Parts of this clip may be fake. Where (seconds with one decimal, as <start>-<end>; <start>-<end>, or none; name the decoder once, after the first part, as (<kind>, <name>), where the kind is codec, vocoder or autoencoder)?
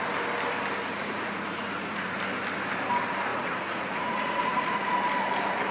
0.9-2.2 (vocoder, Vocos); 3.3-4.9